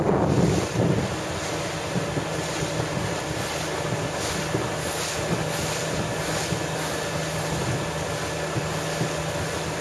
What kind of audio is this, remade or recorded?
recorded